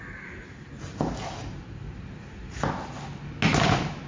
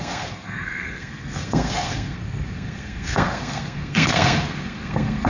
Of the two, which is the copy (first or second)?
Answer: second